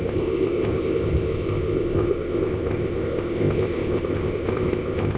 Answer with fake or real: fake